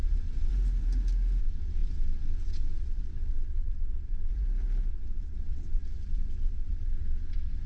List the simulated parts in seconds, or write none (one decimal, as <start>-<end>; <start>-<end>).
0.0-0.5; 1.4-4.3; 4.9-7.7